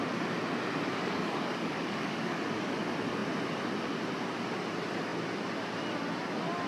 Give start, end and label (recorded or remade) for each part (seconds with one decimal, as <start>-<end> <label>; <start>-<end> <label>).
0.0-1.0 recorded; 1.0-2.8 remade; 2.8-6.7 recorded